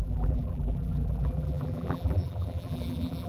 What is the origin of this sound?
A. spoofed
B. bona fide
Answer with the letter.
A